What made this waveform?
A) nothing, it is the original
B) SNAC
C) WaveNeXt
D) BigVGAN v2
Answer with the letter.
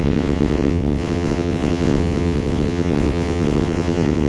C